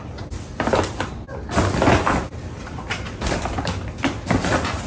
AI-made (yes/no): no